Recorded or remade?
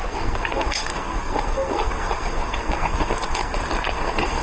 remade